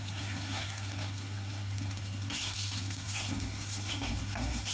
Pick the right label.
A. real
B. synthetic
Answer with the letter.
B